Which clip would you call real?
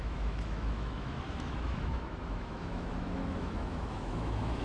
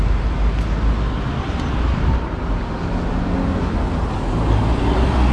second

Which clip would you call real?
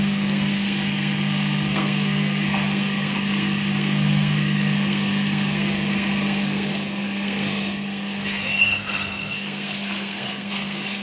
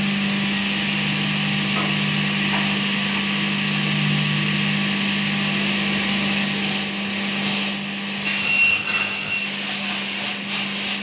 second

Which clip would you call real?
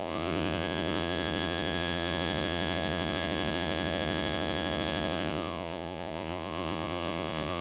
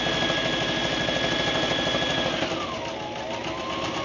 second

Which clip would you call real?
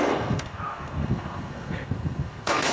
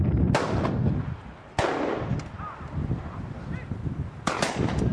second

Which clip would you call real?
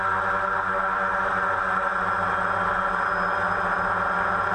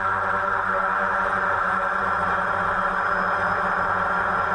first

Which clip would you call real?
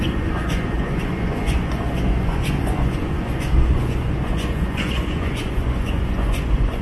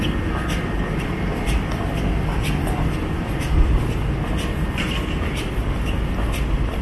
second